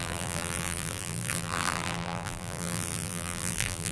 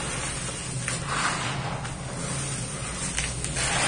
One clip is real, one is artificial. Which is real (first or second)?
second